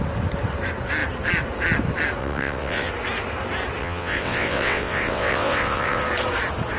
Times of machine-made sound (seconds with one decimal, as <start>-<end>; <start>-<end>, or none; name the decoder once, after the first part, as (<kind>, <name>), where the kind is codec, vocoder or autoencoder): 2.2-2.9 (vocoder, WaveNeXt); 3.8-6.0